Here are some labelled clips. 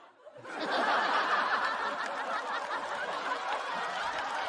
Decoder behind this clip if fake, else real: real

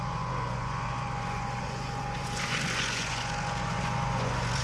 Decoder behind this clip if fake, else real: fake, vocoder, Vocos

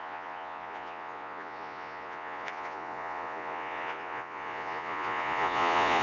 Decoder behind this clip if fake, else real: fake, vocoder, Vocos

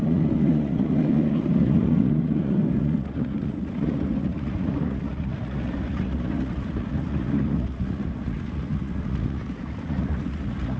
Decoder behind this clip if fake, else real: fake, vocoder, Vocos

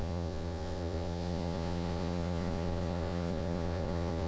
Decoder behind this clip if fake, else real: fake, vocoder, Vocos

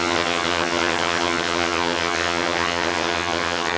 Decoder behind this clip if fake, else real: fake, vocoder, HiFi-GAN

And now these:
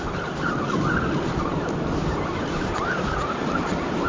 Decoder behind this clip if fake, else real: real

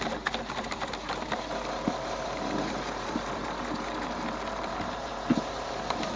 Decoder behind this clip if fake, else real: fake, vocoder, BigVGAN v2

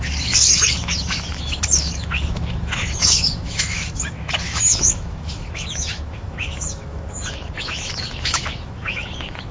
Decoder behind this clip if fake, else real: fake, autoencoder, DAC-VAE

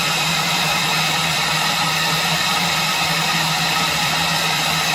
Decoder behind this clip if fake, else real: fake, vocoder, BigVGAN v2